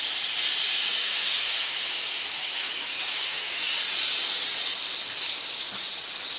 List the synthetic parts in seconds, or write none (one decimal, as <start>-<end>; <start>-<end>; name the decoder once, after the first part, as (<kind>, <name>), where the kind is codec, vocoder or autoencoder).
0.9-3.7 (autoencoder, DAC-VAE)